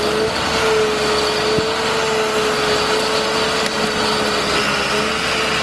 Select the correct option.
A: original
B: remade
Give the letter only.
A